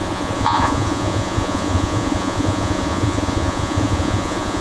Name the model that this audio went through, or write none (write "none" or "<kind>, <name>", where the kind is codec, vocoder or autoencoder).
vocoder, Vocos